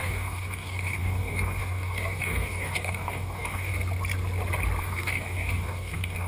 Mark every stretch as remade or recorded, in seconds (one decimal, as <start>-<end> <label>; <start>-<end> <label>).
0.0-3.7 remade; 3.7-4.8 recorded; 4.8-6.3 remade